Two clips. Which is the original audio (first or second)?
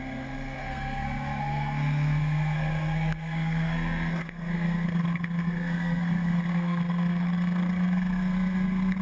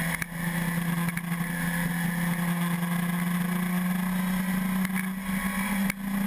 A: second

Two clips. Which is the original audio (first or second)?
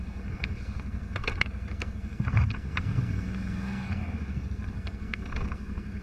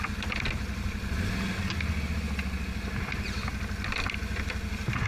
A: second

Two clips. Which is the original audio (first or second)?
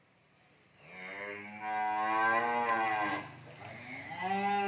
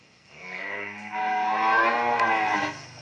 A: first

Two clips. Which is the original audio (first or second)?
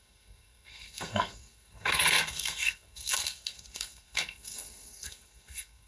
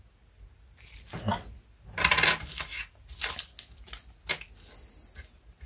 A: second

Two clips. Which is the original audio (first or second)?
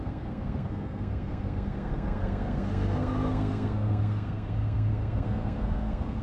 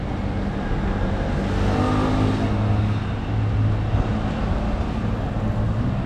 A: second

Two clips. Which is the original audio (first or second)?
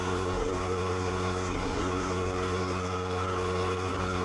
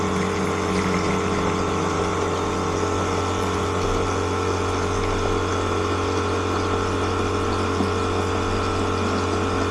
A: second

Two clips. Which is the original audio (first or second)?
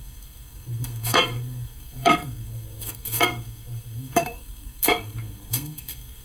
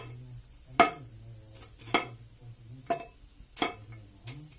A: second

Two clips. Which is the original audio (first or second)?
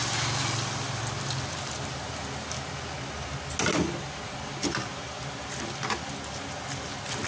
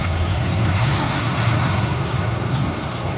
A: first